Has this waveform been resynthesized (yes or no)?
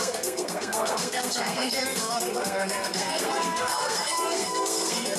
yes